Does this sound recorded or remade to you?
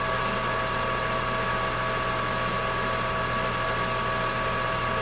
recorded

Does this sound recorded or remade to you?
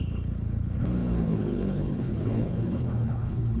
remade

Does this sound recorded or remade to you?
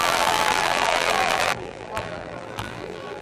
remade